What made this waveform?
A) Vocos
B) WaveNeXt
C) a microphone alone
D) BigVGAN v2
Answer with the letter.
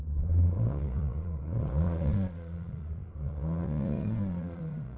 A